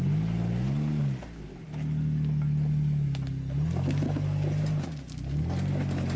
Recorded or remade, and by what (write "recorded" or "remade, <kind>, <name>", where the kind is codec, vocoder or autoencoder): recorded